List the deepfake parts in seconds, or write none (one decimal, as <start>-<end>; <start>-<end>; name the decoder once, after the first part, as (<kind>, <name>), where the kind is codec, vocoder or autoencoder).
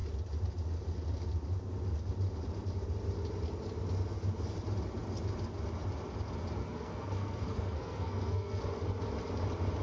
6.6-8.6 (codec, SNAC)